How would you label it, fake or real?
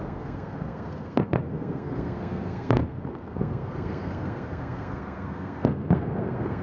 fake